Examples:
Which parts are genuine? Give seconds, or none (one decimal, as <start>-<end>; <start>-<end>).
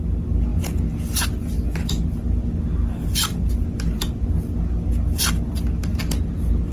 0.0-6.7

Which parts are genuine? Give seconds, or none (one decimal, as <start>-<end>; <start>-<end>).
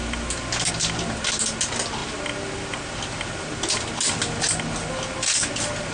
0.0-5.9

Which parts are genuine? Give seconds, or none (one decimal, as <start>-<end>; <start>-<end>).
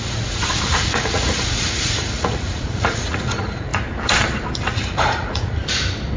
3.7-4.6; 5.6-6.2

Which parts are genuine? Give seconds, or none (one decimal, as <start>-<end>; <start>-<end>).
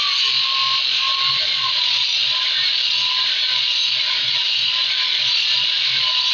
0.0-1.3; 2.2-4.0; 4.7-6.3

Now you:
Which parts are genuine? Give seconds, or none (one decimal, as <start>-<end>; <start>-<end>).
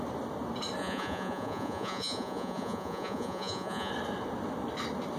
0.0-0.8; 3.9-5.2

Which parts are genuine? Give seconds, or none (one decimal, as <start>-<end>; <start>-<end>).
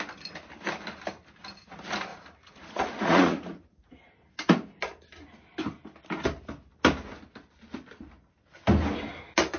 0.0-2.1; 4.1-9.6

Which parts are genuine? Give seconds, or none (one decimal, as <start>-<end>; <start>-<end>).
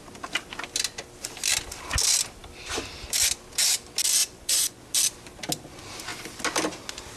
0.0-4.2; 4.8-7.2